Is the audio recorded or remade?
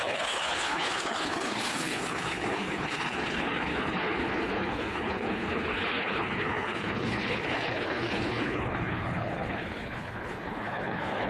remade